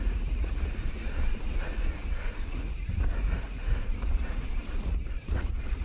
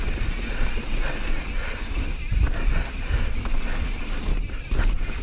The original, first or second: second